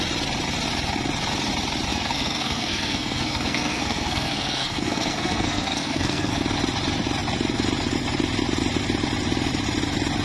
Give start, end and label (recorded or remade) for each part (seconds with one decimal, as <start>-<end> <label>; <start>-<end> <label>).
0.0-1.9 recorded; 1.9-6.4 remade; 6.4-10.2 recorded